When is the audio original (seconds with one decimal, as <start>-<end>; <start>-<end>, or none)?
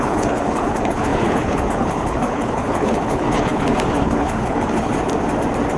4.9-5.8